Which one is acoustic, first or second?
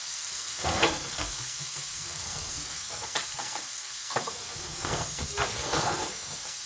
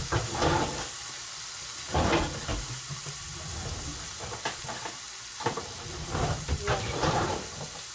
second